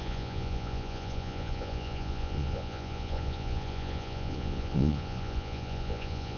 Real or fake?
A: fake